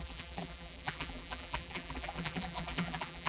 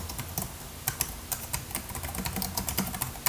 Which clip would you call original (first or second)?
second